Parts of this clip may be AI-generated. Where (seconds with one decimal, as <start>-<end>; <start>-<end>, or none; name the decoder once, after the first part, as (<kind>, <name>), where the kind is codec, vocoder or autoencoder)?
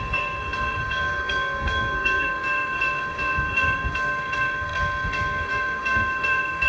0.0-6.7 (codec, SNAC)